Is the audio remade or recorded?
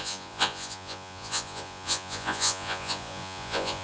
remade